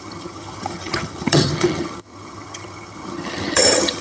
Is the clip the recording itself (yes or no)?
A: no